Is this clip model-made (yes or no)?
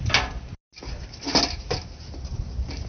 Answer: no